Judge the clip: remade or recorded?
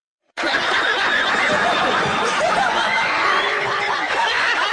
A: remade